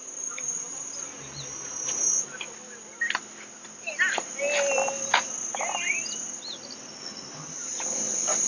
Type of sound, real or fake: real